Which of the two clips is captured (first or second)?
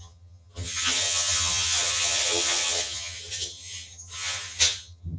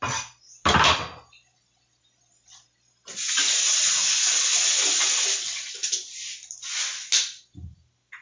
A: second